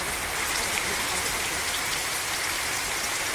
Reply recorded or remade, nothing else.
recorded